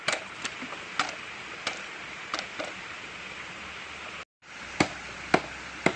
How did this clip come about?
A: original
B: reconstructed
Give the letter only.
A